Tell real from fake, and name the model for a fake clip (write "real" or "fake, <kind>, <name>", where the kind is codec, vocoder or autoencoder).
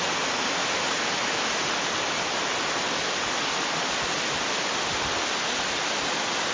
real